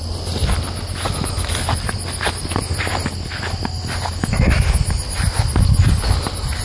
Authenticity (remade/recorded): recorded